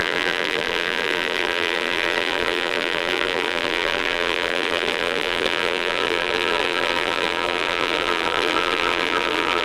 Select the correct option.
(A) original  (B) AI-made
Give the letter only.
B